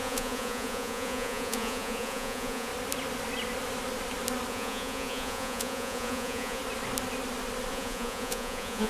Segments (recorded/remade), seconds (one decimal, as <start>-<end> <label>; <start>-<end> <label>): 0.0-2.7 remade; 2.7-4.5 recorded; 4.5-6.6 remade; 6.6-7.7 recorded; 7.7-8.9 remade